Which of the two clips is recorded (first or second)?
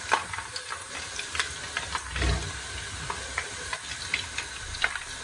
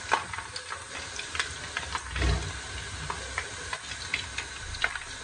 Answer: second